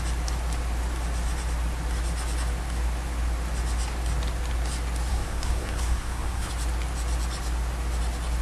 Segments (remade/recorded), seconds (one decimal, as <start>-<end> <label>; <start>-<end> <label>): 0.0-5.1 recorded; 5.1-6.5 remade; 6.5-8.4 recorded